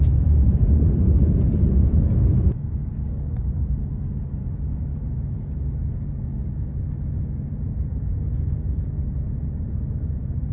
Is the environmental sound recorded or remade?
remade